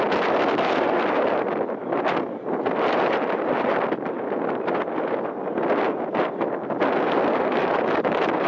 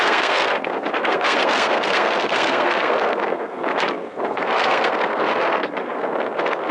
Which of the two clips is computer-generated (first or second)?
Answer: second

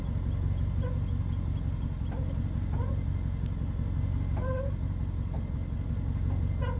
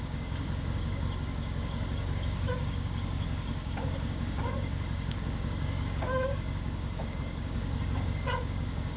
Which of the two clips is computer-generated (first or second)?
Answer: second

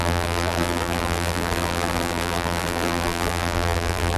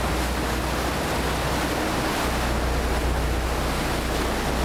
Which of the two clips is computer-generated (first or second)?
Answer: first